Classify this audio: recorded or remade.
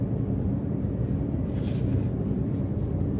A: remade